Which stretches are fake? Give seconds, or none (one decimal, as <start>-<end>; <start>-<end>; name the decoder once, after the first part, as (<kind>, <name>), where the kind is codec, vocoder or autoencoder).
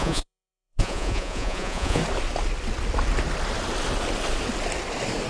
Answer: 0.0-2.0 (vocoder, Vocos)